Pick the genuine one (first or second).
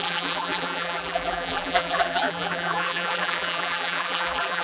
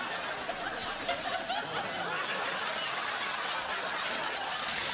second